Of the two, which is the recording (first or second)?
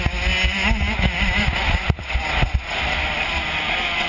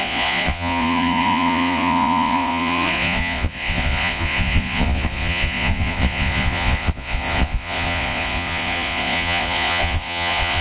first